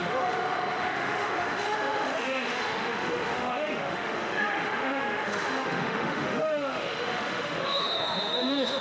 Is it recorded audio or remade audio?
remade